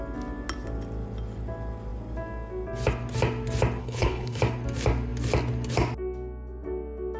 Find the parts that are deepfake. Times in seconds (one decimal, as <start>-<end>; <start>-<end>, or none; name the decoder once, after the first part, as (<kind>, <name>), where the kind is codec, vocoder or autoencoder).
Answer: 3.8-4.4 (codec, HILCodec)